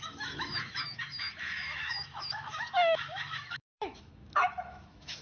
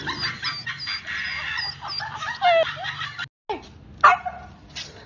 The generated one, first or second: first